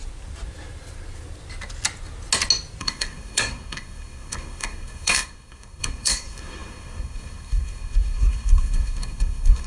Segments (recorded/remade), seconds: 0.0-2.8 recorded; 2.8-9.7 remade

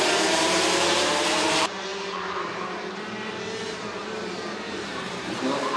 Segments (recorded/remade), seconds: 0.0-5.8 remade

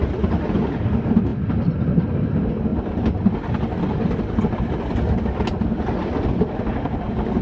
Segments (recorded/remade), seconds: 0.0-7.4 recorded

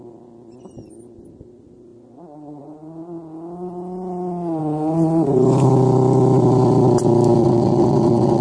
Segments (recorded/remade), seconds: 0.0-7.4 recorded; 7.4-8.4 remade

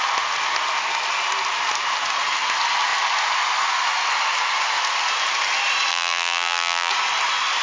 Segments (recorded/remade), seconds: 0.0-5.9 recorded; 5.9-6.9 remade; 6.9-7.6 recorded

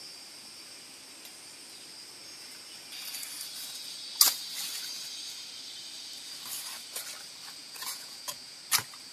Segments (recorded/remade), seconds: 0.0-7.6 recorded; 7.6-8.6 remade; 8.6-9.1 recorded